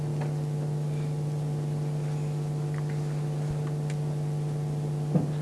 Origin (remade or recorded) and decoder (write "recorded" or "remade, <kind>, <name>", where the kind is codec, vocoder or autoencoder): recorded